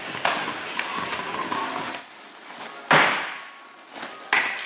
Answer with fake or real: real